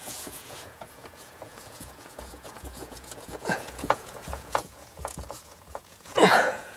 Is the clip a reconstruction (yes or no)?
yes